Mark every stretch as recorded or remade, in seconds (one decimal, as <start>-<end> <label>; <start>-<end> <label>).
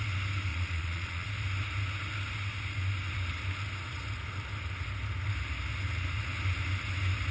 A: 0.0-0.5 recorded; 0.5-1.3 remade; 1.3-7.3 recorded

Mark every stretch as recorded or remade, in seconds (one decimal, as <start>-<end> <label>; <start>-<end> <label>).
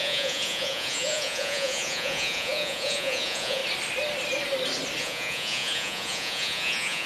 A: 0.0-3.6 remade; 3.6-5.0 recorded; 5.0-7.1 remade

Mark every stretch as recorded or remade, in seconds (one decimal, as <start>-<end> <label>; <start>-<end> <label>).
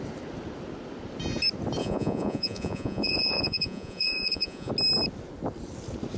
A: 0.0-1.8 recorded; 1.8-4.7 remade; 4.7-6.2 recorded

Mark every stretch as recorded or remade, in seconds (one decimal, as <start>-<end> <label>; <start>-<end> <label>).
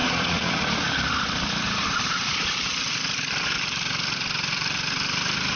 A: 0.0-0.6 remade; 0.6-5.6 recorded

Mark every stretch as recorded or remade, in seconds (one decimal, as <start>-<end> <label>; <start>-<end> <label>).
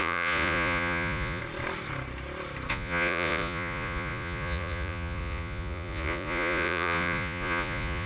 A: 0.0-1.4 remade; 1.4-2.7 recorded; 2.7-8.1 remade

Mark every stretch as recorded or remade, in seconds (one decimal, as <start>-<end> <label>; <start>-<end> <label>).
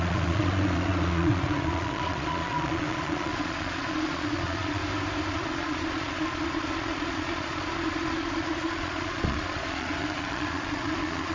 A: 0.0-4.8 remade; 4.8-5.3 recorded; 5.3-11.3 remade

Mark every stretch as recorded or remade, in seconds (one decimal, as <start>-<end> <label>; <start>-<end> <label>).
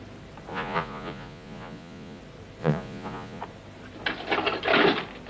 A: 0.0-0.5 recorded; 0.5-2.2 remade; 2.2-2.6 recorded; 2.6-3.4 remade; 3.4-5.3 recorded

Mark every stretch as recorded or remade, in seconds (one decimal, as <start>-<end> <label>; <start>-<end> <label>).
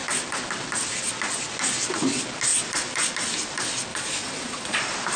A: 0.0-3.9 recorded; 3.9-4.8 remade; 4.8-5.2 recorded